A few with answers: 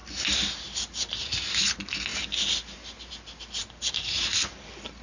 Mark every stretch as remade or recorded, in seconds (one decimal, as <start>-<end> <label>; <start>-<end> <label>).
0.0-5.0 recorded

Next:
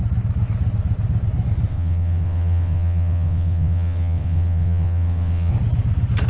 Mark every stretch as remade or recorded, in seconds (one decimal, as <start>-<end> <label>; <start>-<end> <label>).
0.0-1.7 recorded; 1.7-5.5 remade; 5.5-6.3 recorded

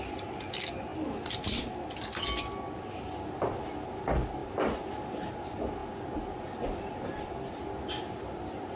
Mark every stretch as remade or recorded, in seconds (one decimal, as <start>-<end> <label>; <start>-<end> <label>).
0.0-8.8 recorded

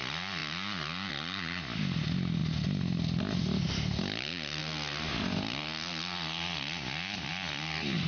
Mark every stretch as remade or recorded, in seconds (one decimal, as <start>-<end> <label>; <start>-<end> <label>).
0.0-8.1 recorded